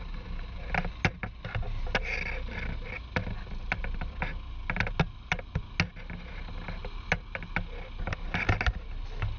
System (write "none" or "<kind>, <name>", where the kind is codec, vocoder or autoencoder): none